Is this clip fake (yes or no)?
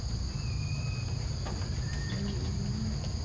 no